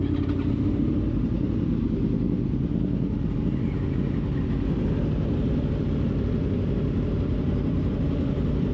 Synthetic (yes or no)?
no